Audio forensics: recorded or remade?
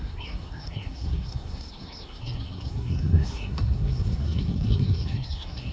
remade